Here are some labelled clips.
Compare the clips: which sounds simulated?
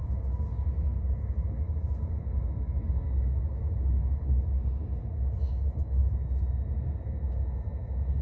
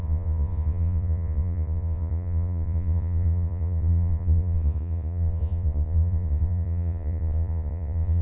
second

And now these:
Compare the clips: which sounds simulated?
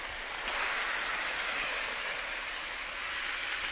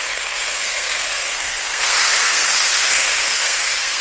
second